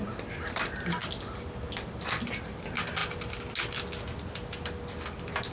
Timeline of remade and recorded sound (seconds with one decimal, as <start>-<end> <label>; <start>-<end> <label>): 0.0-5.5 recorded